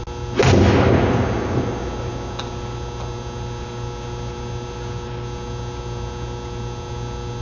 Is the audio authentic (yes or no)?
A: yes